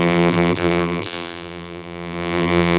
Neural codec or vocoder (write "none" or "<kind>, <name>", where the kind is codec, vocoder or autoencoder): vocoder, BigVGAN v2